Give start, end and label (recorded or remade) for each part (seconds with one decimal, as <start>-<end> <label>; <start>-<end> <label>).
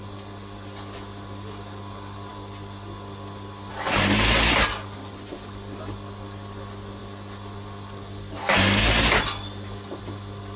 0.0-10.6 recorded